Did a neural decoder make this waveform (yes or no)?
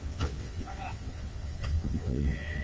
yes